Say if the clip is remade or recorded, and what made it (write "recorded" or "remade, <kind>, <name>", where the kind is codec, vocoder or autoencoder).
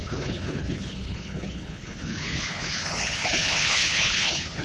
remade, codec, HILCodec